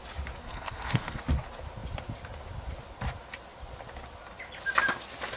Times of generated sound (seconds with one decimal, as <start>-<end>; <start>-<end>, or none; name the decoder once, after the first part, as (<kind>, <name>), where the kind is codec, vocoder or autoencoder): 0.4-1.2 (codec, SNAC)